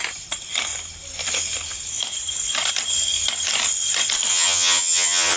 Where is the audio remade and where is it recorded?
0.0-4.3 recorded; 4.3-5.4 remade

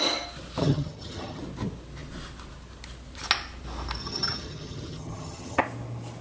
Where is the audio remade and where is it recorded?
0.0-0.6 recorded; 0.6-1.4 remade; 1.4-4.0 recorded; 4.0-5.6 remade; 5.6-6.2 recorded

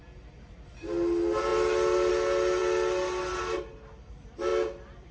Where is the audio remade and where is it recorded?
0.0-5.1 recorded

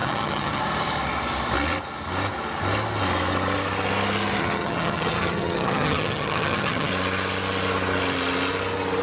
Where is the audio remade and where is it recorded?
0.0-0.6 remade; 0.6-4.4 recorded; 4.4-6.9 remade; 6.9-9.0 recorded

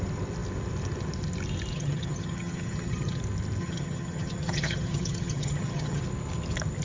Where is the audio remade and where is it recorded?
0.0-1.7 recorded; 1.7-3.2 remade; 3.2-3.6 recorded; 3.6-6.0 remade; 6.0-6.8 recorded

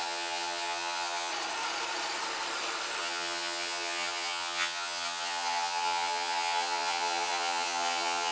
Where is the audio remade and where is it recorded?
0.0-1.3 remade; 1.3-3.0 recorded; 3.0-8.3 remade